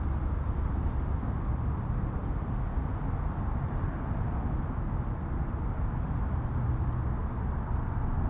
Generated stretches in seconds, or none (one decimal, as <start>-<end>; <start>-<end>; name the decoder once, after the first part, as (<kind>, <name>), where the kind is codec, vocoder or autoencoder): none

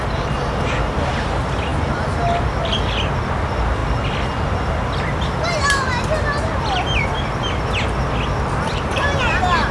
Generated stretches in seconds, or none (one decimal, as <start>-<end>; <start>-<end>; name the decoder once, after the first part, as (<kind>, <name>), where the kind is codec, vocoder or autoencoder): none

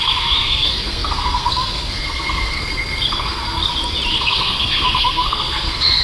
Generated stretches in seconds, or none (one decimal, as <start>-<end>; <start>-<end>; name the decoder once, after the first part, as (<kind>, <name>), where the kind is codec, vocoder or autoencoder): 0.0-3.6 (codec, SNAC); 4.1-6.0

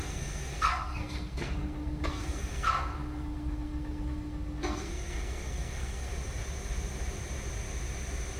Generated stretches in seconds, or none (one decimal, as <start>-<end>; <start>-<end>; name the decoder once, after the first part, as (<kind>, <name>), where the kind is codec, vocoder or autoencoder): 0.0-6.1 (codec, SNAC)